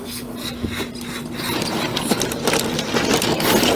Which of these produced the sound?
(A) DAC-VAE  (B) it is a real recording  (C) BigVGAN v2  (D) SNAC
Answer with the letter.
B